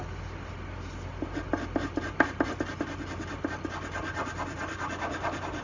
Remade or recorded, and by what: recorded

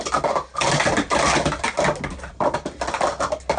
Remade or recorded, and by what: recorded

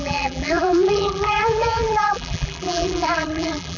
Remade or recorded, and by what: remade, vocoder, BigVGAN v2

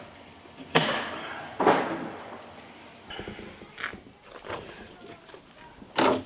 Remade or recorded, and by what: recorded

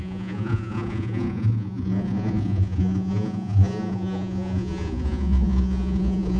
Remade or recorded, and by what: remade, vocoder, Vocos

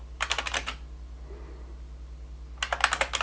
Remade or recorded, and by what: recorded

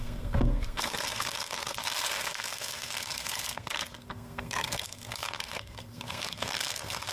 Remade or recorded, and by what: remade, codec, SNAC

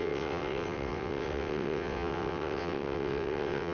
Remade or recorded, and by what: remade, vocoder, WaveNeXt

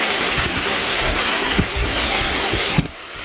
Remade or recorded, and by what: remade, codec, SNAC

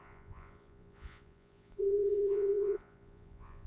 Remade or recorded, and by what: remade, vocoder, Vocos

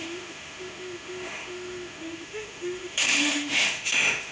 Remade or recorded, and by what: remade, autoencoder, DAC-VAE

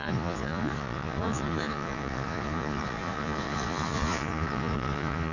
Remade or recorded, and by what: remade, vocoder, Vocos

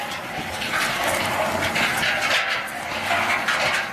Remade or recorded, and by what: recorded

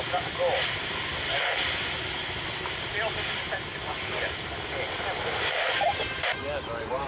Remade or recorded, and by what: recorded